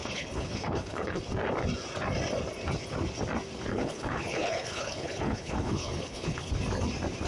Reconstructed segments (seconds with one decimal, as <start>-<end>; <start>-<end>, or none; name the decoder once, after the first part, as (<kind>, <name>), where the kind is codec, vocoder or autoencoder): 0.0-1.2 (codec, HILCodec); 3.7-6.5